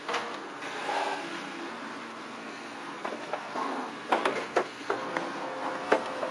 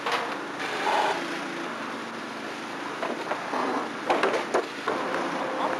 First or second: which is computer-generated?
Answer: first